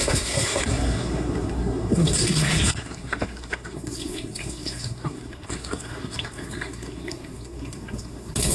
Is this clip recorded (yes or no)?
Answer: no